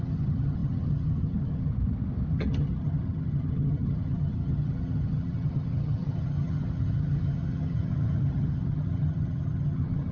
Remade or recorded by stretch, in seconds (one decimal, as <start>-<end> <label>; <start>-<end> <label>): 0.0-1.7 remade; 1.7-2.3 recorded; 2.3-10.1 remade